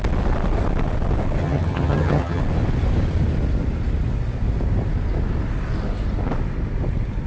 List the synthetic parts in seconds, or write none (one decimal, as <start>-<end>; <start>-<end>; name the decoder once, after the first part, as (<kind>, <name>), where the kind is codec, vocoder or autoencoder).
1.4-2.4 (vocoder, HiFi-GAN)